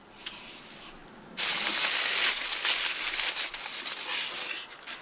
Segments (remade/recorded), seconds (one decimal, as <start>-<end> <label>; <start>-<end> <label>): 0.0-1.0 recorded; 1.0-1.6 remade; 1.6-5.0 recorded